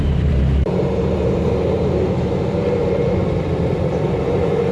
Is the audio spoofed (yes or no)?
yes